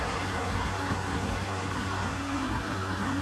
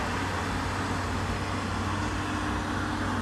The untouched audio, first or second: second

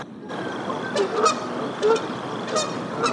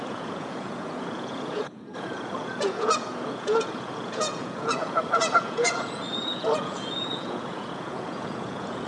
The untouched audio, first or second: first